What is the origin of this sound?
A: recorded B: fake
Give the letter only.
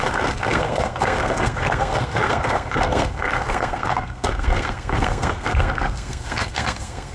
B